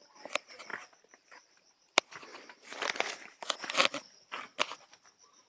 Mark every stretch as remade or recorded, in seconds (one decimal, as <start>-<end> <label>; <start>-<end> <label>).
0.0-5.5 recorded